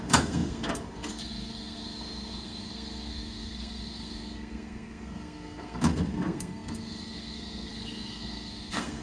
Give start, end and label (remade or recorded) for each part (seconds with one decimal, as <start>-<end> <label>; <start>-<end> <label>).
0.0-9.0 remade